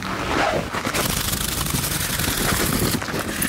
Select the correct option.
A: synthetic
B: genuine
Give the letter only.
B